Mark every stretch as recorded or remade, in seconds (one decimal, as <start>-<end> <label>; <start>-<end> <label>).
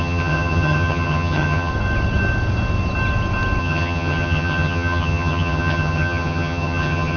0.0-1.7 remade; 1.7-3.6 recorded; 3.6-7.2 remade